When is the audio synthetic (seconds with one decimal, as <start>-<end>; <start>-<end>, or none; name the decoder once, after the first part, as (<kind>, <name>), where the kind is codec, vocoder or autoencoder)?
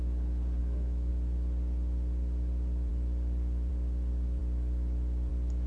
0.6-1.1 (autoencoder, DAC-VAE)